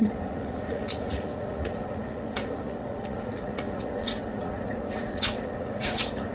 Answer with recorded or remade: remade